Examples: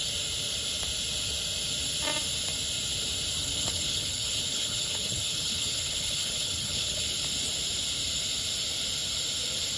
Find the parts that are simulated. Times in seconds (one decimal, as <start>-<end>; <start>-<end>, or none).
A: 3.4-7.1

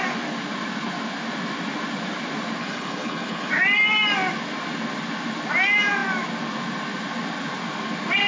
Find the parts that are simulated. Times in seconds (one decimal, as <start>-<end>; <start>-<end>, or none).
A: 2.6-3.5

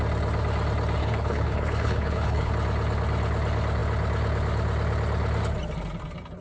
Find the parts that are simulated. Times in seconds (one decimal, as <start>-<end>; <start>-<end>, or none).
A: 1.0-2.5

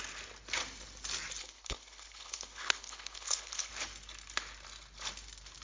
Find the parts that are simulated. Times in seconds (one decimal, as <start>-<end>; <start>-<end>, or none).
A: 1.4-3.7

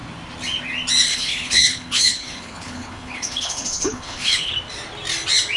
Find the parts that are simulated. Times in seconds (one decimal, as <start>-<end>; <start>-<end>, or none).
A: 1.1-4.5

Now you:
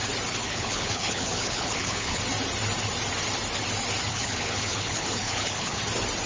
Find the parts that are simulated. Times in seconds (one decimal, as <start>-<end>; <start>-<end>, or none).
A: 0.4-2.2; 4.1-5.8